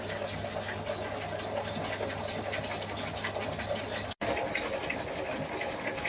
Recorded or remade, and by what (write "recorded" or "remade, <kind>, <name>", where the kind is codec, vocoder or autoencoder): recorded